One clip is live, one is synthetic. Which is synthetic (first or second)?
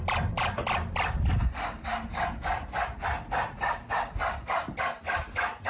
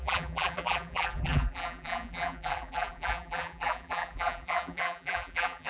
second